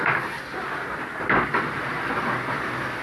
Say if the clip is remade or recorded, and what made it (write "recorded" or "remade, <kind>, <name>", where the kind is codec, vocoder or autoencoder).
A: recorded